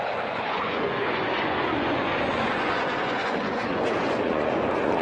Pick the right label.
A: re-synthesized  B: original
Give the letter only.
A